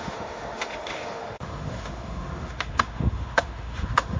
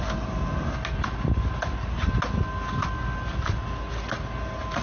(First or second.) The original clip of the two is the second